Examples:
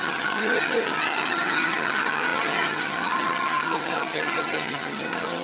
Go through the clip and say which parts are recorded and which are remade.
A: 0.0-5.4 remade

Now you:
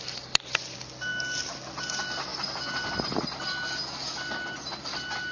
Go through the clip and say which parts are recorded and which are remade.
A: 0.0-5.3 recorded

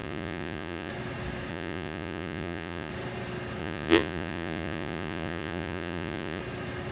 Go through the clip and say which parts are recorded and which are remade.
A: 0.0-0.9 remade; 0.9-1.5 recorded; 1.5-2.9 remade; 2.9-3.6 recorded; 3.6-6.4 remade; 6.4-6.9 recorded

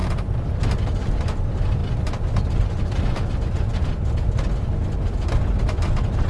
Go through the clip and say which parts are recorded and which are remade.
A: 0.0-6.3 recorded